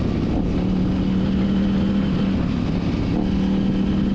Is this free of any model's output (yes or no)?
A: yes